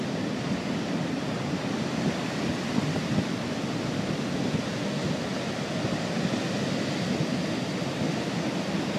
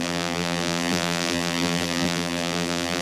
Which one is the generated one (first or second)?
second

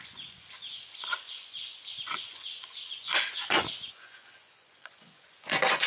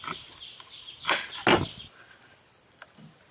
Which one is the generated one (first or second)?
first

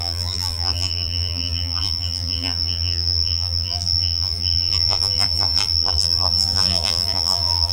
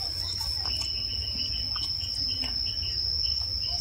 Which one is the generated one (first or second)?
first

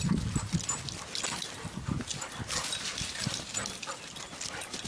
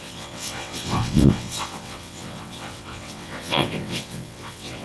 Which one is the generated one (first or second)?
second